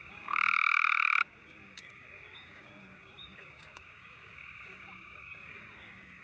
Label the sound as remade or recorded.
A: remade